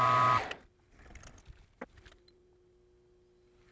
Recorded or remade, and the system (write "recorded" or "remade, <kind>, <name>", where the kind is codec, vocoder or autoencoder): recorded